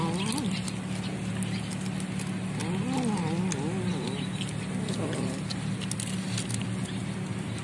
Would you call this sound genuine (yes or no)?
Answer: yes